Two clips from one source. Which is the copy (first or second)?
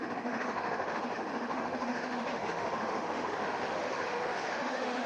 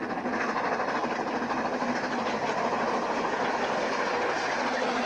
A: first